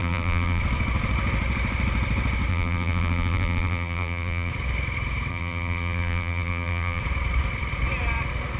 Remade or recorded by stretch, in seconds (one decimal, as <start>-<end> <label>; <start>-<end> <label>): 0.0-0.6 remade; 0.6-2.5 recorded; 2.5-4.5 remade; 4.5-5.3 recorded; 5.3-7.0 remade; 7.0-8.6 recorded